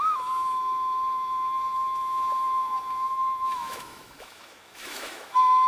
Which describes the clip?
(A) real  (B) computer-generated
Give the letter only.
B